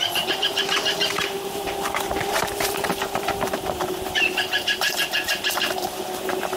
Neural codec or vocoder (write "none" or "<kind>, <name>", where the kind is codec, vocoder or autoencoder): vocoder, BigVGAN v2